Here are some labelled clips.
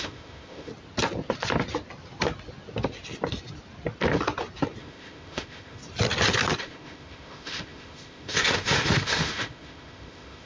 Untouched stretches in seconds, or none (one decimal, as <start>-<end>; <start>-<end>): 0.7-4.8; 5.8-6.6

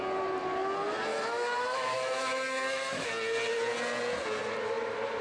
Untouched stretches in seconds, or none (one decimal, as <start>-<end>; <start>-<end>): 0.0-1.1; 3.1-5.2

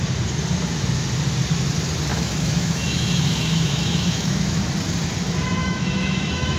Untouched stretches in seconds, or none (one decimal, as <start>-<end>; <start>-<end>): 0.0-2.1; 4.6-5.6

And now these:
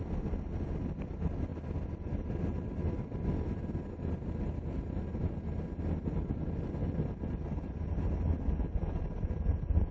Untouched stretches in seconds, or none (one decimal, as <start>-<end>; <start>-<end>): 0.0-9.9

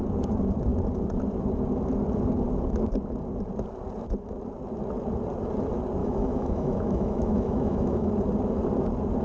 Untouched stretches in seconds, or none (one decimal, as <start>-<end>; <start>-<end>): 0.0-6.0; 8.1-9.2

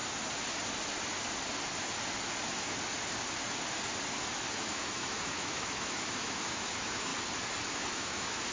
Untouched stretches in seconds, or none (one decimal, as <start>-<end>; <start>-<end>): 0.0-4.5; 7.1-7.7